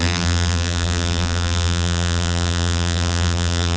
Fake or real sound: fake